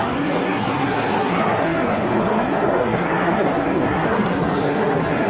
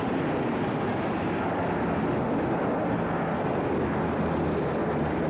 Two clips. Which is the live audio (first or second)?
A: second